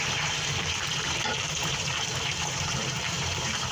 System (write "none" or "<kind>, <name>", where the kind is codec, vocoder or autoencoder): vocoder, BigVGAN v2